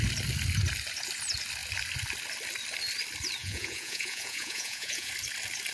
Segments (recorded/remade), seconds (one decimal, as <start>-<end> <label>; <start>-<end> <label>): 0.0-3.4 recorded; 3.4-5.1 remade; 5.1-5.7 recorded